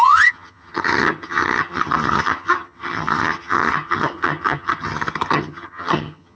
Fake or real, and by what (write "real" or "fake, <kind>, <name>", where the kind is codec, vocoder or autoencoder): fake, vocoder, HiFi-GAN